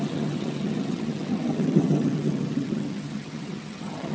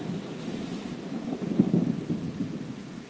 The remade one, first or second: first